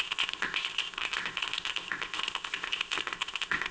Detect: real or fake fake